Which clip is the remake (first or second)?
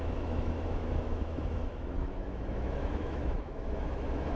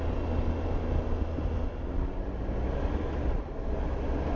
first